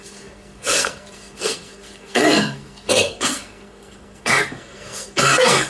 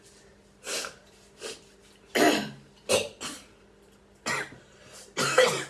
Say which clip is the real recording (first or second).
second